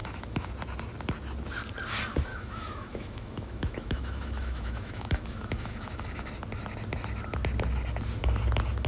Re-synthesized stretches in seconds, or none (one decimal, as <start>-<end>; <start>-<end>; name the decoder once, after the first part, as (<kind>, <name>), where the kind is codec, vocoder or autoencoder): 0.0-0.5 (autoencoder, DAC-VAE); 2.3-6.3